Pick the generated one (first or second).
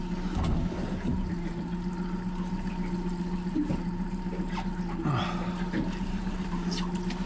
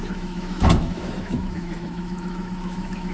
second